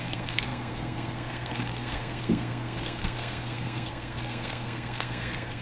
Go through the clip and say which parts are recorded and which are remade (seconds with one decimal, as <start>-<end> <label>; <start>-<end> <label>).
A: 0.0-5.6 remade